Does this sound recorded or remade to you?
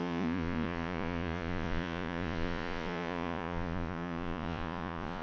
remade